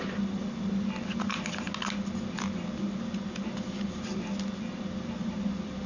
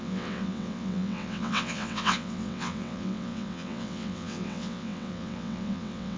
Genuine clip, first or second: first